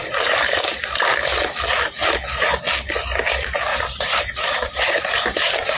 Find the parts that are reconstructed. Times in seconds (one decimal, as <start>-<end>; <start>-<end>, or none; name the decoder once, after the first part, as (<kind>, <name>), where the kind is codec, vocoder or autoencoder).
3.7-5.8 (vocoder, BigVGAN v2)